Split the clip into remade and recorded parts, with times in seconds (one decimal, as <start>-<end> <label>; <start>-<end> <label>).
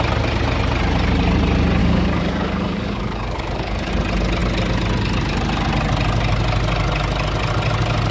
0.0-1.8 recorded; 1.8-3.9 remade; 3.9-8.1 recorded